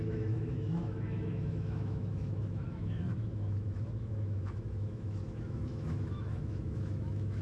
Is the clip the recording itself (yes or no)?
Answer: no